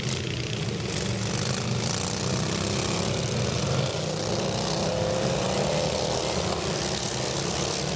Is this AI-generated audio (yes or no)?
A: no